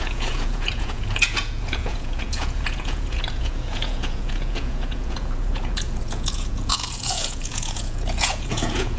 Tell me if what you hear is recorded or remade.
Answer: remade